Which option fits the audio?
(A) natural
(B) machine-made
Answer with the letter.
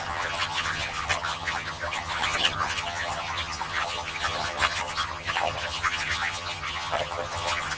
B